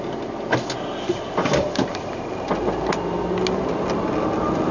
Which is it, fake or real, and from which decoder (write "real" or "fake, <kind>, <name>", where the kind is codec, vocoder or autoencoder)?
real